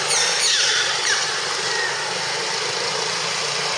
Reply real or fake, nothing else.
real